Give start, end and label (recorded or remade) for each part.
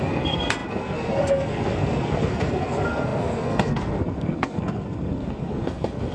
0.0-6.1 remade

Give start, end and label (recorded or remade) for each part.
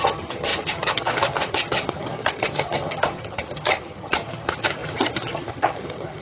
0.0-6.2 remade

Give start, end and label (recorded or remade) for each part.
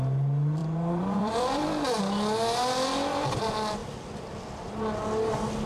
0.0-0.6 recorded; 0.6-2.0 remade; 2.0-5.7 recorded